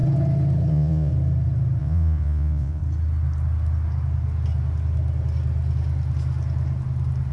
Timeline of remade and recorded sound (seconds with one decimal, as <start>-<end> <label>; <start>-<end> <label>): 0.0-0.7 recorded; 0.7-1.1 remade; 1.1-1.8 recorded; 1.8-2.8 remade; 2.8-7.3 recorded